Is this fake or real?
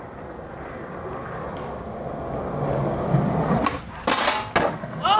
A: real